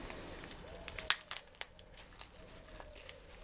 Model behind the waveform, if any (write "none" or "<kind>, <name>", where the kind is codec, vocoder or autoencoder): none